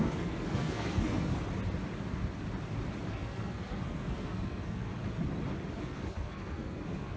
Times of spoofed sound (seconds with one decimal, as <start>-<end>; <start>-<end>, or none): 0.0-1.3; 3.1-4.9; 5.8-7.2